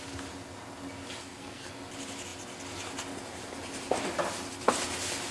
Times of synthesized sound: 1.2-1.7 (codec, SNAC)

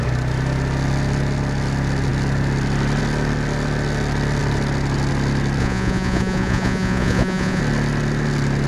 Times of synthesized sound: 5.6-7.6 (vocoder, Vocos)

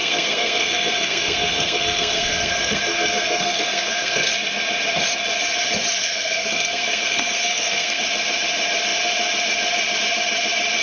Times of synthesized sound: 0.0-4.3 (codec, SNAC); 6.0-8.0

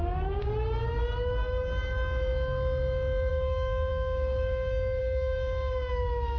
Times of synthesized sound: 0.0-0.4 (codec, DAC); 3.3-6.4

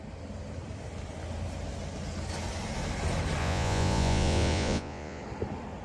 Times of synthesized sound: 3.4-5.2 (vocoder, Vocos)

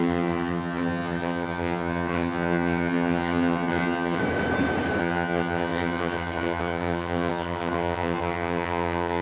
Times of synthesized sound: 0.0-4.2 (vocoder, HiFi-GAN); 5.0-9.2

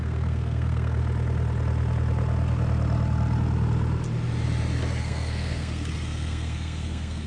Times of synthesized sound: 0.0-1.0 (codec, SNAC); 5.0-7.3

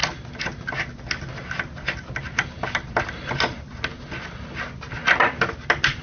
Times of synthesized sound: none